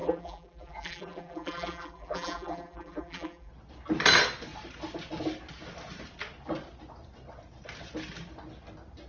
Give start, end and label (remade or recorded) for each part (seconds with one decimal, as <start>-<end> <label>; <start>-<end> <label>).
0.0-3.5 remade; 3.5-9.1 recorded